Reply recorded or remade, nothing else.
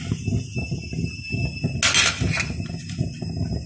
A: recorded